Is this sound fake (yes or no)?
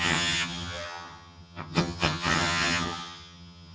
yes